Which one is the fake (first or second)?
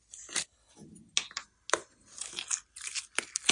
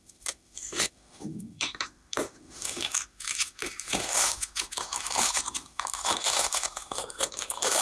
second